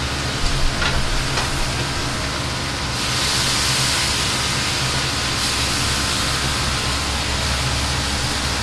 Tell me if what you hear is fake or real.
real